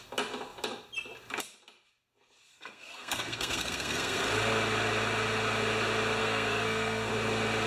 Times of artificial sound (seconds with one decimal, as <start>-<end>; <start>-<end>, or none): 2.5-4.2; 6.2-7.1

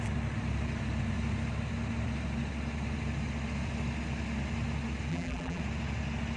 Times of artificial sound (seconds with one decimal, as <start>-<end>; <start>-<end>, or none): 5.1-5.6

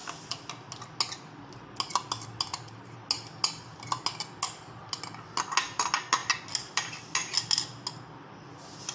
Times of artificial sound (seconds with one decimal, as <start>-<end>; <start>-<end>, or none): none

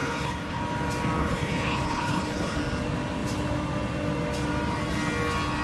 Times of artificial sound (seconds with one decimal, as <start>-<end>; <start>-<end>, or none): 0.0-0.6; 1.2-2.6

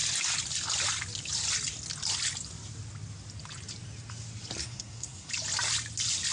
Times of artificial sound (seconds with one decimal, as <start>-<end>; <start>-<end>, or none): 4.6-5.3